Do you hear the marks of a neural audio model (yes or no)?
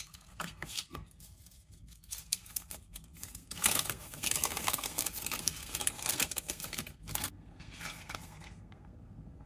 yes